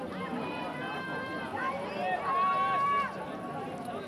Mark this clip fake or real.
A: real